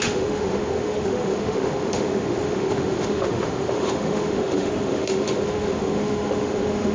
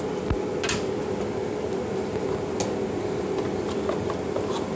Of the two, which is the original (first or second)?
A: second